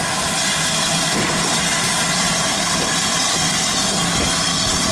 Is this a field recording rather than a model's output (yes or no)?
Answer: yes